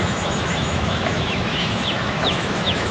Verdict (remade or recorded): remade